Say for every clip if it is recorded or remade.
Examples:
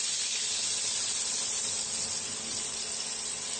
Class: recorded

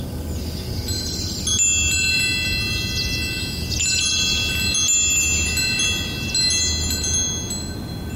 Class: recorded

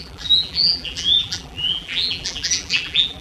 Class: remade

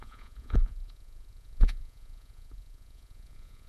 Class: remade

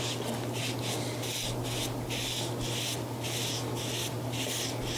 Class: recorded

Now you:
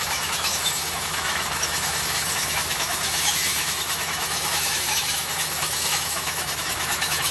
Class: remade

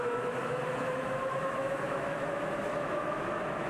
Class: remade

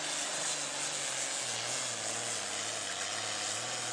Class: recorded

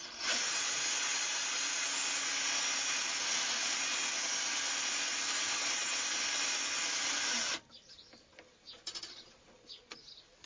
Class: recorded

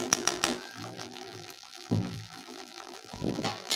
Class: remade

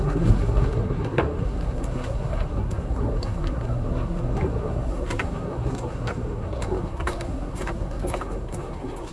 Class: remade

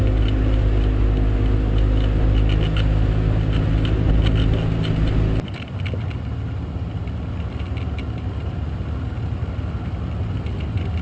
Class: recorded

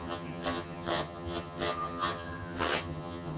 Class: remade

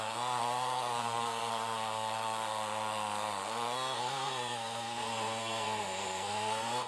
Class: remade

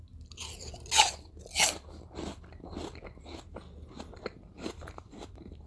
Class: recorded